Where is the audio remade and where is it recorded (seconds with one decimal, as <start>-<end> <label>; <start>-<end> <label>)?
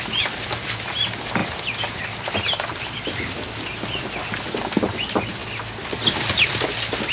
0.0-7.1 recorded